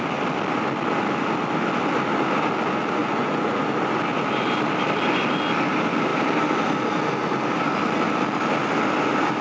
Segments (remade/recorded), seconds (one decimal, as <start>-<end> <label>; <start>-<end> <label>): 0.0-3.0 recorded; 3.0-3.6 remade; 3.6-9.4 recorded